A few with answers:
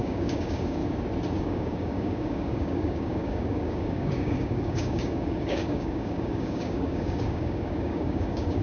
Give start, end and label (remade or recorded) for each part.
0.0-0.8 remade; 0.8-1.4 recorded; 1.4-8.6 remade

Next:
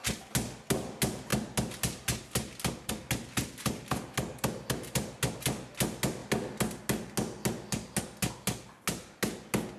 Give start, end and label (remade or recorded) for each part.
0.0-9.8 recorded

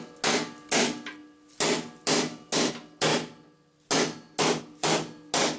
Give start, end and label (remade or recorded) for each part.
0.0-5.6 recorded